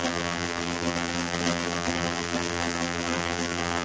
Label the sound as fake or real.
fake